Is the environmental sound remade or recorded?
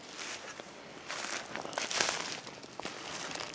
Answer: recorded